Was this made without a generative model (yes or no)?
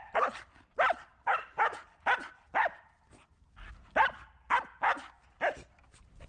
yes